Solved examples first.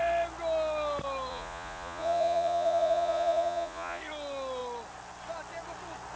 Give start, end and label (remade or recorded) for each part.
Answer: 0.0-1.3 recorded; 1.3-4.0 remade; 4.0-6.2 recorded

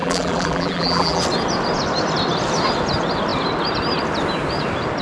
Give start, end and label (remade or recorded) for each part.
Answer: 0.0-1.2 remade; 1.2-5.0 recorded

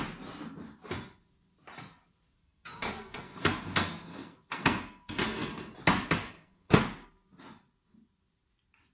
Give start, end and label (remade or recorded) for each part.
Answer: 0.0-2.4 recorded; 2.4-5.7 remade; 5.7-6.2 recorded; 6.2-6.8 remade; 6.8-8.9 recorded